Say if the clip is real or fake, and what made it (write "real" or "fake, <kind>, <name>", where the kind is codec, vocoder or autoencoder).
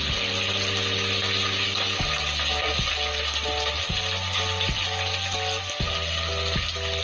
real